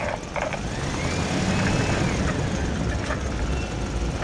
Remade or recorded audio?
recorded